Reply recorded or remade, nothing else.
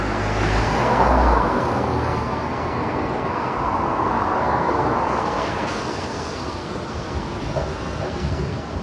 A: remade